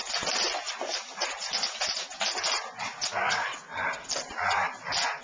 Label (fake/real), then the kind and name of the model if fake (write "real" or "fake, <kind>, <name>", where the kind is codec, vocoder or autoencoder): real